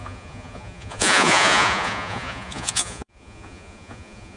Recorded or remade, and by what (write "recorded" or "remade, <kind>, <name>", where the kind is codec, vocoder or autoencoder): remade, vocoder, Vocos